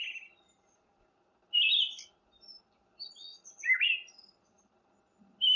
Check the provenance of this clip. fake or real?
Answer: real